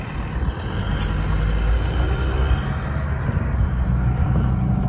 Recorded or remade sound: recorded